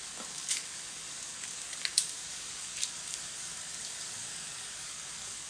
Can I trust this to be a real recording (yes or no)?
no